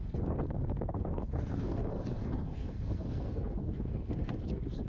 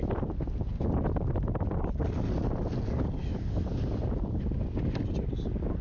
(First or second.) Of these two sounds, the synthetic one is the first